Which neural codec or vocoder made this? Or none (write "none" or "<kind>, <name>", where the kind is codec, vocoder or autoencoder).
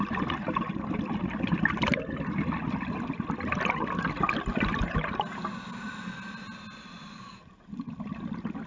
none